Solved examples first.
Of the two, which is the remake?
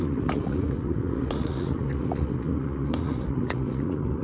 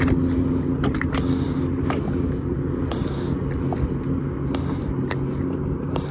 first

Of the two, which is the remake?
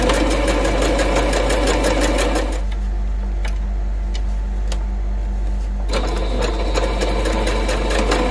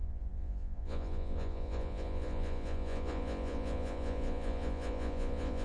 second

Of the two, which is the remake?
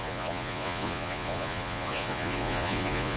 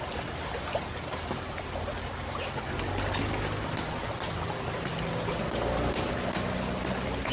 first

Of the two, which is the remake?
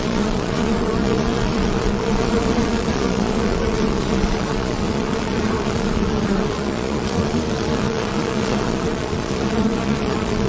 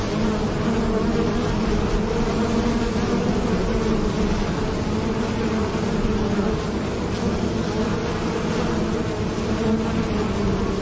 first